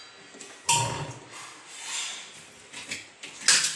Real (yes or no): yes